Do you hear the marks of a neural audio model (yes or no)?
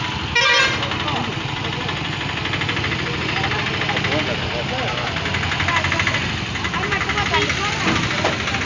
no